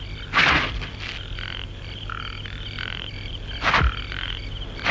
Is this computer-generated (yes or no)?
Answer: no